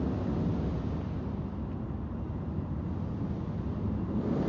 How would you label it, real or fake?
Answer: real